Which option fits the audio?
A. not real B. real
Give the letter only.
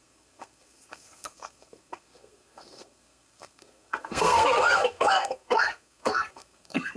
A